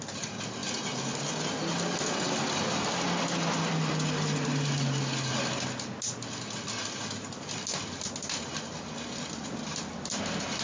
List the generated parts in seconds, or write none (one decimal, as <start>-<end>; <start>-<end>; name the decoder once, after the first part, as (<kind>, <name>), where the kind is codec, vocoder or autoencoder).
none